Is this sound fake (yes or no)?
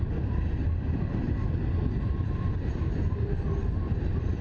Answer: yes